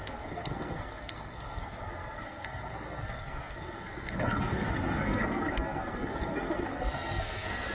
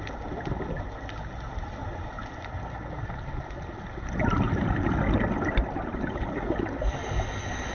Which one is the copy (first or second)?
first